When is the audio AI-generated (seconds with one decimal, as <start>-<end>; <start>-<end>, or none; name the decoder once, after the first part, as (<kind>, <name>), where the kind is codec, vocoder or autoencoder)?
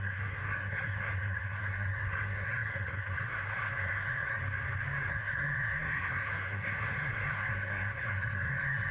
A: 0.0-4.4 (codec, SNAC); 5.1-8.9